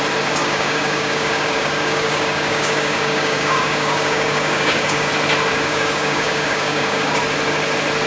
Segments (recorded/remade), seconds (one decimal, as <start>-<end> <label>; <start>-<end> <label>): 0.0-0.4 recorded; 0.4-5.1 remade; 5.1-5.5 recorded; 5.5-7.2 remade; 7.2-8.1 recorded